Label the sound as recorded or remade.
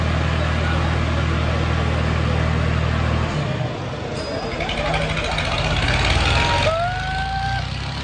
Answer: recorded